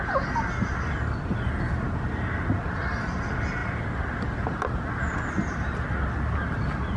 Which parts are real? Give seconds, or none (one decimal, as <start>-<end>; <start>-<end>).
0.0-7.0